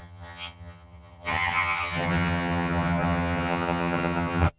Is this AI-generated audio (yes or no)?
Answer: yes